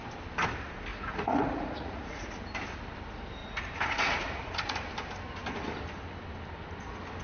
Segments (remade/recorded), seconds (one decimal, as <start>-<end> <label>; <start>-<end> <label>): 0.0-0.9 recorded; 0.9-2.3 remade; 2.3-3.4 recorded; 3.4-4.7 remade; 4.7-7.2 recorded